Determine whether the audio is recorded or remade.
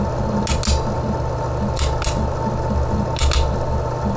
recorded